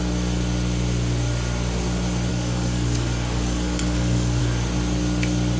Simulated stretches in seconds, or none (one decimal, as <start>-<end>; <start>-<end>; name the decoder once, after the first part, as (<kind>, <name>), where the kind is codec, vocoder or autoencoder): 2.3-4.4 (codec, DAC)